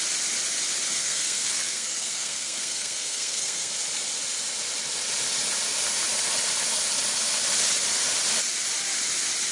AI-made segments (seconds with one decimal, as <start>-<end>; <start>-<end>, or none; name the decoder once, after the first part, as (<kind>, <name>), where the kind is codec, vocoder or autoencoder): 1.0-3.7 (codec, SNAC)